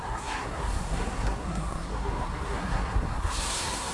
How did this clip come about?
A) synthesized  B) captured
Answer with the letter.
A